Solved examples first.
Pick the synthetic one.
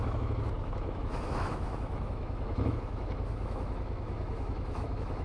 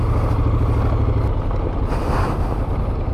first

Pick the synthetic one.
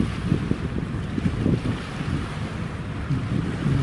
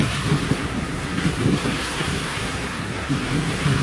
second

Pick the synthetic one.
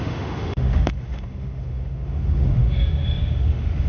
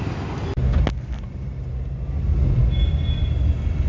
first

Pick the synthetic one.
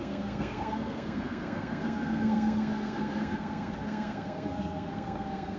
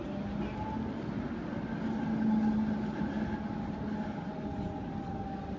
first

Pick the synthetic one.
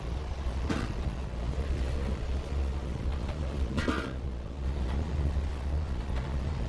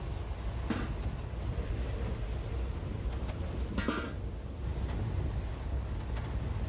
first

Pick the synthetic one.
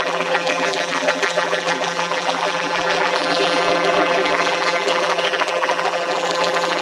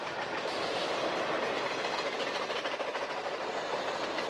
first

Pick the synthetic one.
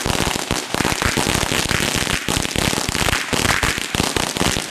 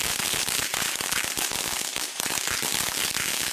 second